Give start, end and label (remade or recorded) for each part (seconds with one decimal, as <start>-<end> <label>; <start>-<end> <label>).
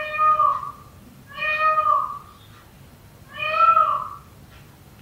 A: 0.0-5.0 recorded